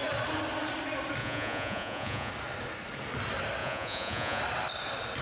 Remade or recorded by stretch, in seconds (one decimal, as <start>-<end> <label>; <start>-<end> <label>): 0.0-1.2 recorded; 1.2-2.3 remade; 2.3-3.6 recorded; 3.6-4.4 remade; 4.4-5.2 recorded

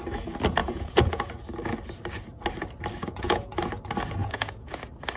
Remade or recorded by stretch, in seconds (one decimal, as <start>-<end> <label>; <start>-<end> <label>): 0.0-0.6 recorded; 0.6-1.3 remade; 1.3-3.0 recorded; 3.0-3.6 remade; 3.6-4.2 recorded; 4.2-4.8 remade; 4.8-5.2 recorded

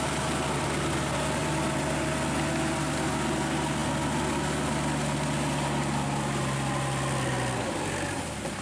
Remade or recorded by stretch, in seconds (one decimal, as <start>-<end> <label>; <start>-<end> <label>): 0.0-8.6 recorded

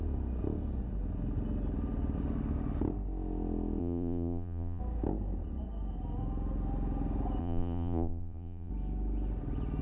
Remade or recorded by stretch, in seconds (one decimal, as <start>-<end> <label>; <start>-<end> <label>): 0.0-3.8 recorded; 3.8-4.8 remade; 4.8-7.4 recorded; 7.4-8.7 remade; 8.7-9.8 recorded

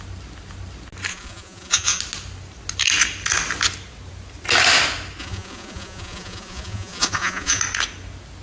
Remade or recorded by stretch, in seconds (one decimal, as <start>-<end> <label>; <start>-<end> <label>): 0.0-1.1 recorded; 1.1-2.0 remade; 2.0-5.2 recorded; 5.2-7.6 remade; 7.6-8.4 recorded

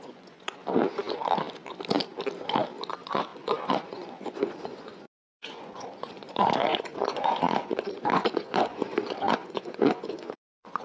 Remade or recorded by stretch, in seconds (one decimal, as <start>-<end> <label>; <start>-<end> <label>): 0.0-0.8 remade; 0.8-2.9 recorded; 2.9-10.8 remade

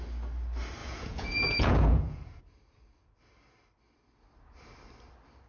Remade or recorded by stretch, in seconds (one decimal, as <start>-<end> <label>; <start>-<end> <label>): 0.0-0.8 recorded; 0.8-2.4 remade; 2.4-5.5 recorded